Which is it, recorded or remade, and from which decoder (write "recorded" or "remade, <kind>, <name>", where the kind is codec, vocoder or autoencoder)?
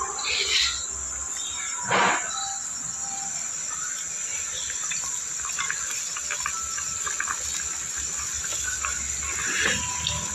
recorded